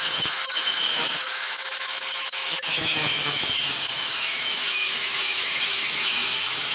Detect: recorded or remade remade